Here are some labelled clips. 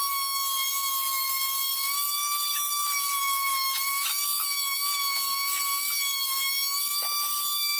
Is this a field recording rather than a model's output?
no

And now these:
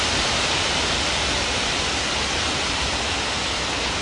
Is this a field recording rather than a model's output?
yes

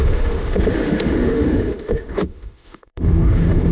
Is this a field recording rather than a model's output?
no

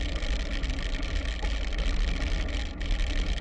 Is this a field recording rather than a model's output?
yes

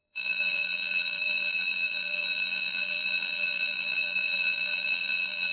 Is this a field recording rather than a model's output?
no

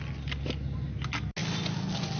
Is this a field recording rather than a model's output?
yes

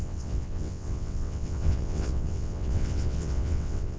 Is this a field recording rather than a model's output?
no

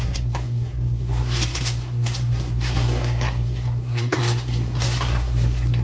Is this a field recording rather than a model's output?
no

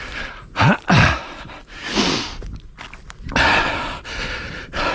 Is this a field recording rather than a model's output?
yes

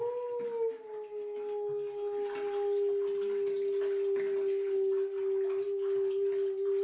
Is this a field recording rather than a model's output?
yes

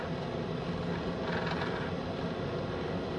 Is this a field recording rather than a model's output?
no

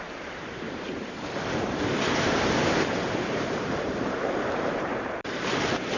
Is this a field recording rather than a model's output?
no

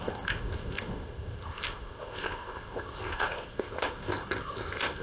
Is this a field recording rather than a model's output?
no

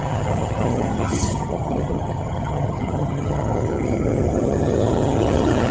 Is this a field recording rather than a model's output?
no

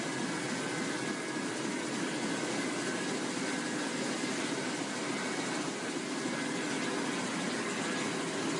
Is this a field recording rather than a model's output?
yes